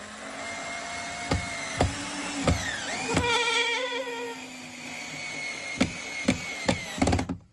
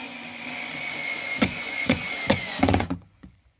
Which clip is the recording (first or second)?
first